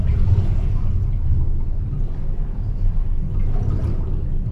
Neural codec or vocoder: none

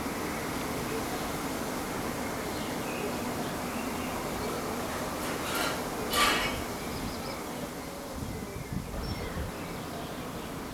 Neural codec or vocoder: none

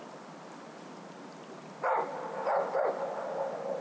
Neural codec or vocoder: none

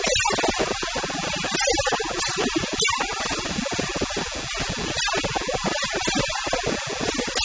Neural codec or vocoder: none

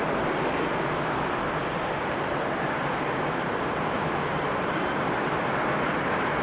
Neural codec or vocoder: none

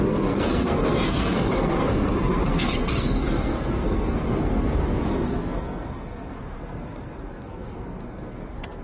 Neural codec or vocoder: codec, SNAC